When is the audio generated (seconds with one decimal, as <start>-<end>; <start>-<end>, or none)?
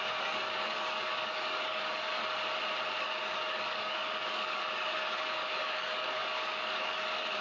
0.0-2.2; 3.0-7.4